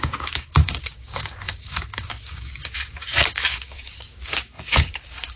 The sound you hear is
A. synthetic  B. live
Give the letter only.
A